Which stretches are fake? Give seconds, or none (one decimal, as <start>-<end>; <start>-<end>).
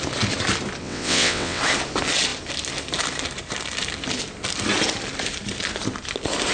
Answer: 0.8-1.6